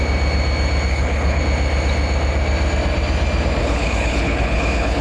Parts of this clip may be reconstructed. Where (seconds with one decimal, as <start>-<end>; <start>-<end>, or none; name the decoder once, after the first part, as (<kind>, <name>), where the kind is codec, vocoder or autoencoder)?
0.9-1.4 (codec, HILCodec); 3.6-5.0